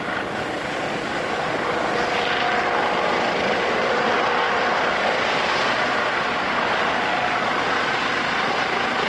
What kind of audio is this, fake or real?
real